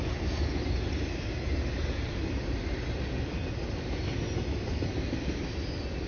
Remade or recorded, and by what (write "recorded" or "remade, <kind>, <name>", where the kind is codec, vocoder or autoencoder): recorded